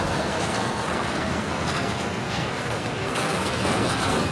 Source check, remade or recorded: remade